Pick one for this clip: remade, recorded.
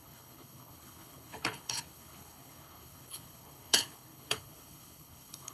remade